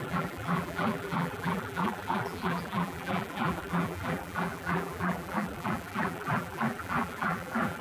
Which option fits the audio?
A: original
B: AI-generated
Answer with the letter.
B